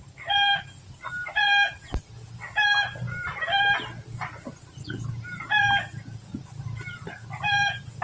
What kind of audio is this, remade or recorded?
recorded